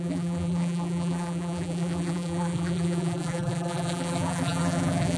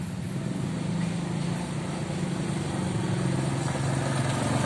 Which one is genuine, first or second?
second